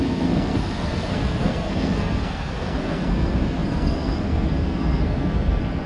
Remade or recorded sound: remade